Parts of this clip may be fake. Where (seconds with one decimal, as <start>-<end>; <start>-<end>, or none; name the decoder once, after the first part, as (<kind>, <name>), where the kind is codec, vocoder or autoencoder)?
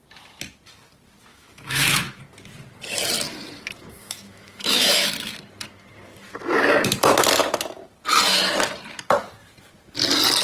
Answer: 1.3-2.2 (autoencoder, DAC-VAE); 4.0-5.1